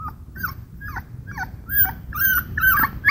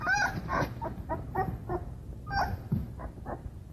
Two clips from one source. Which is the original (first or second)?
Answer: first